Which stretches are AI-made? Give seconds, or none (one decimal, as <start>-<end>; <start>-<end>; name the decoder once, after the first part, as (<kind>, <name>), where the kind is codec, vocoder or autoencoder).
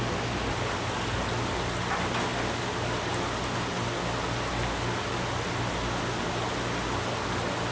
none